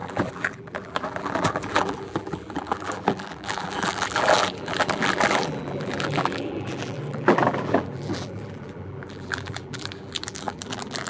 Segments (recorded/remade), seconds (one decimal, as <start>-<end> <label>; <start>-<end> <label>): 0.0-11.1 remade